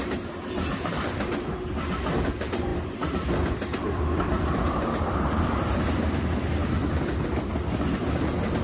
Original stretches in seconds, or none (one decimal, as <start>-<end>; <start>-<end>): 0.0-8.6